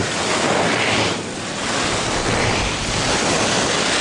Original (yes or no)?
yes